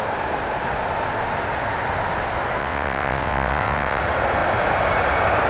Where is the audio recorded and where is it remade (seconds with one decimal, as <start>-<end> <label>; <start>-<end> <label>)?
0.0-2.6 recorded; 2.6-4.0 remade; 4.0-5.5 recorded